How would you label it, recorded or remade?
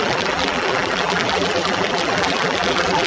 remade